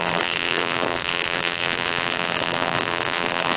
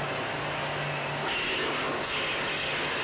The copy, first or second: first